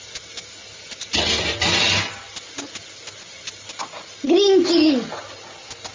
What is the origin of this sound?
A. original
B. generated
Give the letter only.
A